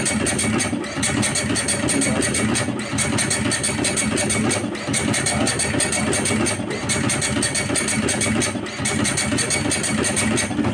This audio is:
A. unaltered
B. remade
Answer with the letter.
A